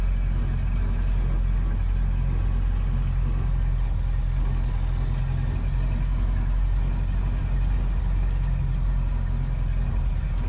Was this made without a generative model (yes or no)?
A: yes